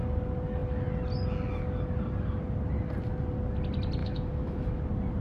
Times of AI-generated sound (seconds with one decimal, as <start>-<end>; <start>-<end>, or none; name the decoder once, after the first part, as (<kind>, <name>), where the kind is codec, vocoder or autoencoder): 4.0-4.8 (autoencoder, DAC-VAE)